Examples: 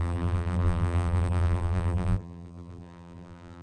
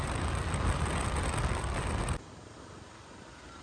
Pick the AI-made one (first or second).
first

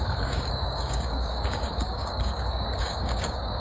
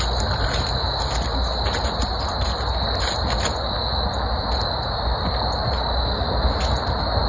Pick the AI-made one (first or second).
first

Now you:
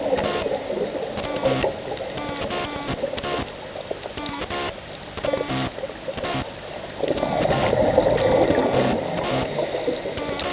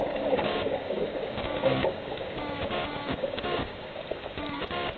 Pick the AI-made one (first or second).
second